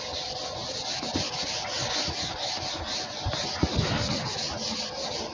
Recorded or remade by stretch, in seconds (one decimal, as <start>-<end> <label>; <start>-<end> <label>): 0.0-5.3 recorded

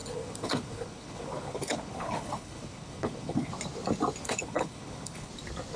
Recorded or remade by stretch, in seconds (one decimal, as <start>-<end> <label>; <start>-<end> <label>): 0.0-3.5 remade; 3.5-4.2 recorded; 4.2-5.3 remade; 5.3-5.8 recorded

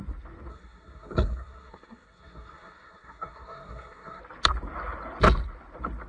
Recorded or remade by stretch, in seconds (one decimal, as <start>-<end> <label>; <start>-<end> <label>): 0.0-0.5 recorded; 0.5-4.2 remade; 4.2-6.1 recorded

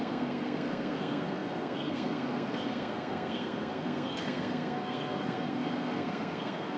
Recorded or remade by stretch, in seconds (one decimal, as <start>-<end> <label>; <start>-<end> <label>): 0.0-6.8 remade

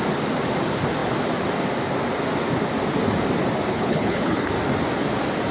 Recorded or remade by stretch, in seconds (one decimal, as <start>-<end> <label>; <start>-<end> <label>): 0.0-3.7 recorded; 3.7-4.5 remade; 4.5-5.5 recorded

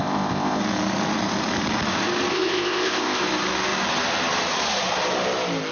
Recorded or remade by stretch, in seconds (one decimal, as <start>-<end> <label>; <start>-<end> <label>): 0.0-0.6 remade; 0.6-2.3 recorded; 2.3-3.2 remade; 3.2-5.7 recorded